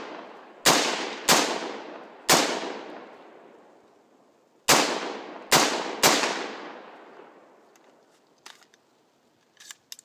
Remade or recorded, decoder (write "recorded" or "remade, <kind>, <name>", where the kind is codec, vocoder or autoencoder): recorded